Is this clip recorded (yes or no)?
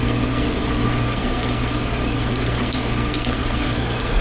no